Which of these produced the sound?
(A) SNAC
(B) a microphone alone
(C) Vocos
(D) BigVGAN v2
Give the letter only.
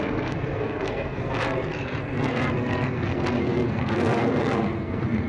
A